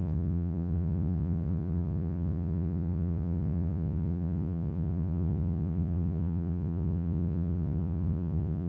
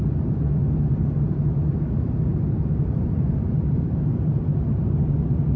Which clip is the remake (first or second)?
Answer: first